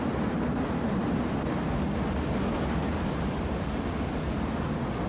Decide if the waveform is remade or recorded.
recorded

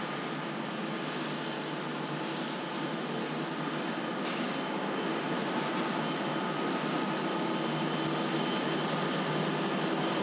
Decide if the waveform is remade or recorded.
recorded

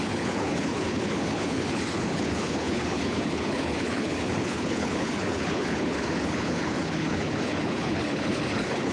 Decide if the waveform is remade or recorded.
remade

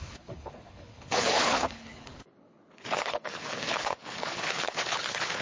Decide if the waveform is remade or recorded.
remade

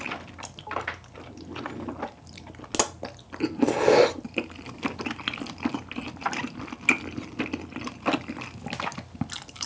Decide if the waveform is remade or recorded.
recorded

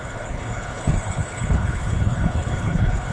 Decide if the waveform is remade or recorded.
remade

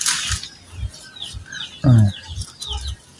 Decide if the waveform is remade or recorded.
recorded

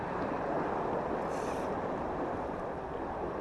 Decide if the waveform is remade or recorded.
recorded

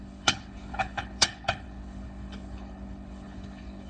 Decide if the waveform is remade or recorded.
remade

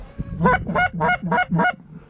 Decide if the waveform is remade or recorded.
recorded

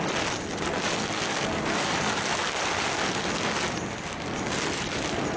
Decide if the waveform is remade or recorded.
recorded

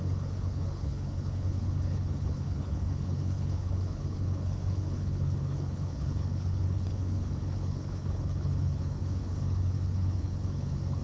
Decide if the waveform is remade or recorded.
remade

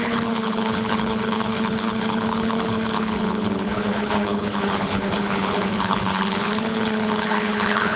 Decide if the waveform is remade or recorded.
remade